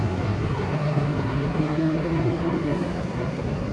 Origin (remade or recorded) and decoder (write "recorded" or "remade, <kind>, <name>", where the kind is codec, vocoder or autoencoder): remade, codec, SNAC